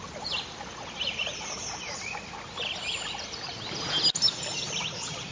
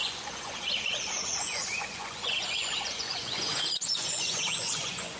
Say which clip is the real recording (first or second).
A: first